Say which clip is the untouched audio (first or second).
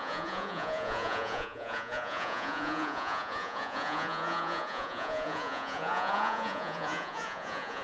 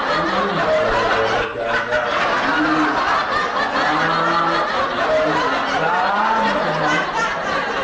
second